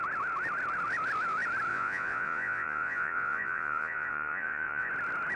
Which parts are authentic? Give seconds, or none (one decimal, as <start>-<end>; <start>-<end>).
0.0-1.7; 4.9-5.4